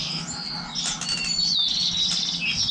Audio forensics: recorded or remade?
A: recorded